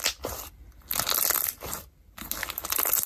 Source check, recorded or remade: recorded